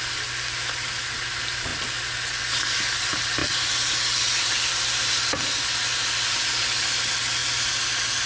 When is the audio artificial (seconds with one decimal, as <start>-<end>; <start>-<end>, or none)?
none